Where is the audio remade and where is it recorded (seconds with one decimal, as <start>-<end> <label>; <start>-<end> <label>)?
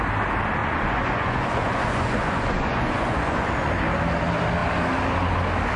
0.0-0.6 recorded; 0.6-3.7 remade; 3.7-5.8 recorded